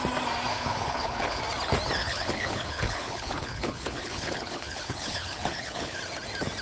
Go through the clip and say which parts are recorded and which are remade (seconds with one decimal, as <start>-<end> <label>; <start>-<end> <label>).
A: 0.0-0.5 recorded; 0.5-1.4 remade; 1.4-2.0 recorded; 2.0-6.0 remade; 6.0-6.6 recorded